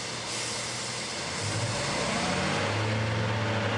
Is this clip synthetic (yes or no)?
no